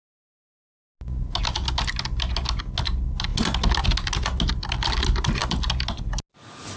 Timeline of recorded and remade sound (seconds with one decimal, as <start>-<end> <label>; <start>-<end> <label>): 0.0-6.8 recorded